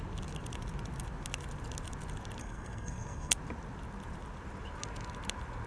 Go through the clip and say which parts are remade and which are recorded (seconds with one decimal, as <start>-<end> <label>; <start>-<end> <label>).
0.0-2.4 recorded; 2.4-3.3 remade; 3.3-5.7 recorded